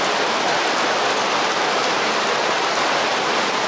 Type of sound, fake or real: real